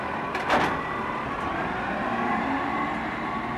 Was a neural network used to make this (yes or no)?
no